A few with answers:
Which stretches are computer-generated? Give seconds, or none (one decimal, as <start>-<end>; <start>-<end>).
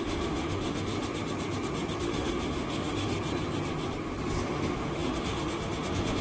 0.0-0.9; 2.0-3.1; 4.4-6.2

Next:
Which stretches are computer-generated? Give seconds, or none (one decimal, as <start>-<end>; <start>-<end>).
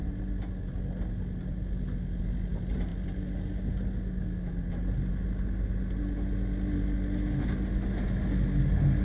none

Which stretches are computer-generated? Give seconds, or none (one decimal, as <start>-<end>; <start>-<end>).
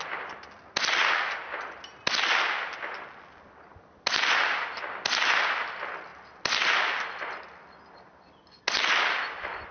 none